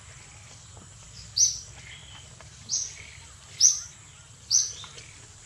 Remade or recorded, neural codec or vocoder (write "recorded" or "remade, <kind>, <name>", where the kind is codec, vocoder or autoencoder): remade, vocoder, BigVGAN v2